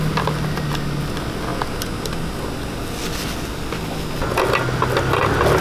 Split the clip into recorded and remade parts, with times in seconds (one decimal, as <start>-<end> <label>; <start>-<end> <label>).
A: 0.0-5.6 recorded